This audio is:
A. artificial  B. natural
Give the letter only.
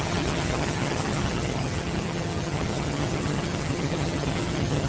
A